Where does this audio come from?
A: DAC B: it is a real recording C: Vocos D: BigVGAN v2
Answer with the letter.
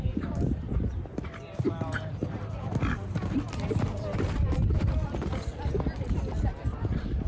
D